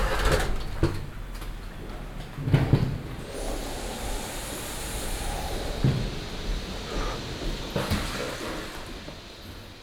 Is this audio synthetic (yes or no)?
no